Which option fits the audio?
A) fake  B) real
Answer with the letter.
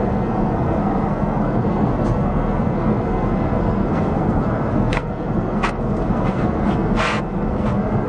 A